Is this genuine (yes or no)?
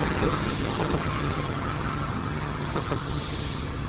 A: no